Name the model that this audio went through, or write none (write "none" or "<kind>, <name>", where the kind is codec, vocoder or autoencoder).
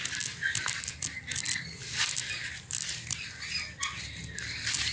none